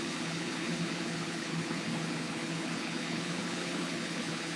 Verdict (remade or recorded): remade